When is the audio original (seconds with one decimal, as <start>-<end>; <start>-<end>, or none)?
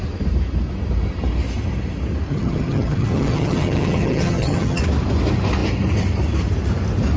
0.0-2.3; 4.8-7.2